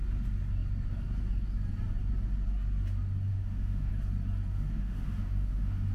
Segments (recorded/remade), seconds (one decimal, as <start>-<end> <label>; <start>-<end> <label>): 0.0-3.3 recorded; 3.3-3.9 remade; 3.9-4.5 recorded; 4.5-5.9 remade